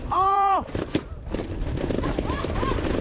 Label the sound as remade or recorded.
remade